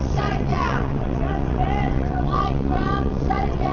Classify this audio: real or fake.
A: fake